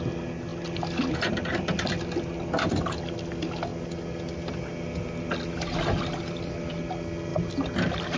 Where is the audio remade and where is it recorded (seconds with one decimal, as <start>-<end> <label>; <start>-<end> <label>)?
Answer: 0.0-8.2 recorded